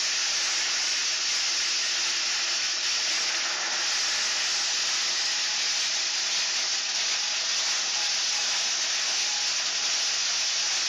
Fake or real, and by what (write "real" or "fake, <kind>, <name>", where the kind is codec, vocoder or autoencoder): real